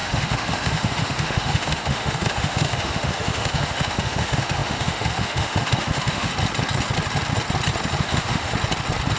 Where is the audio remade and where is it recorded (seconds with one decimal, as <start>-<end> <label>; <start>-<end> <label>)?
0.0-6.3 remade; 6.3-8.0 recorded; 8.0-8.5 remade; 8.5-9.2 recorded